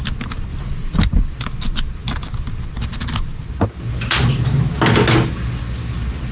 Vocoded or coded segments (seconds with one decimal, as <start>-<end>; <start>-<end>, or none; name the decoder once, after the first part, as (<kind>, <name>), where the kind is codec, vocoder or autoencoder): none